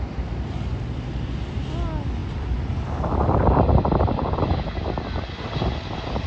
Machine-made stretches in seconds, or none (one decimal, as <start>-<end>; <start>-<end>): none